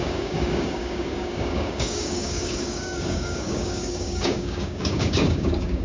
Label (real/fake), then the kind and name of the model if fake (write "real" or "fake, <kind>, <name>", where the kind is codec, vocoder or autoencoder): fake, codec, DAC